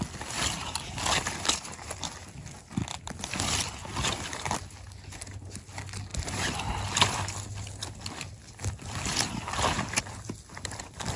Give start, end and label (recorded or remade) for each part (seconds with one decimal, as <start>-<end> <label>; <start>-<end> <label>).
0.0-11.2 recorded